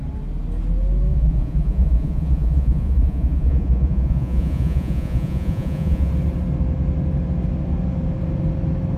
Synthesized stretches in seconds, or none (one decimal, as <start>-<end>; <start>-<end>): 1.1-6.1